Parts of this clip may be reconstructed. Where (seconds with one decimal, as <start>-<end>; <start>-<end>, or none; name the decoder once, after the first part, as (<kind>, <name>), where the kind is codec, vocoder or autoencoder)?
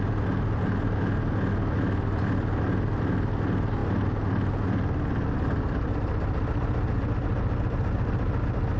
none